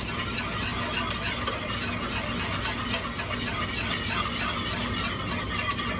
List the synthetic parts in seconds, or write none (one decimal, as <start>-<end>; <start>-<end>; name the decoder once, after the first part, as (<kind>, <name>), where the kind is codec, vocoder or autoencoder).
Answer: none